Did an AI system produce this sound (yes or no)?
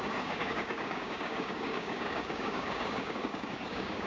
yes